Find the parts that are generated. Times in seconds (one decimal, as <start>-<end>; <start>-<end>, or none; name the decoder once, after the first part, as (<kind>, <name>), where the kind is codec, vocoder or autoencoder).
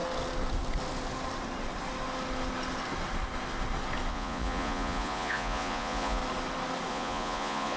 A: 4.1-6.2 (vocoder, Vocos); 6.9-7.8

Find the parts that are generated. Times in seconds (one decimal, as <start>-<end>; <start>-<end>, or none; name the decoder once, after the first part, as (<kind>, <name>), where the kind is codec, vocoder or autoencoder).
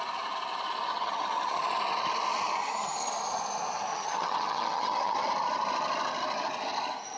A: 0.9-1.6 (vocoder, HiFi-GAN); 2.6-3.1; 3.9-5.2